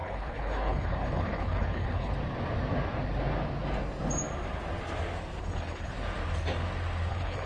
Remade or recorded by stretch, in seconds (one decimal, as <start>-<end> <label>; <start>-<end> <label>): 0.0-2.1 remade; 2.1-5.4 recorded; 5.4-5.9 remade; 5.9-7.1 recorded; 7.1-7.5 remade